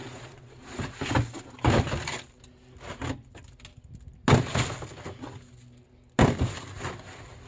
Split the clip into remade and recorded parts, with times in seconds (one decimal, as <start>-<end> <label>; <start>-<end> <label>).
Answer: 0.0-0.8 remade; 0.8-7.5 recorded